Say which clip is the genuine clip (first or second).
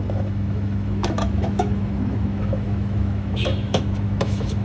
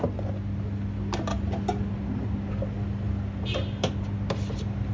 second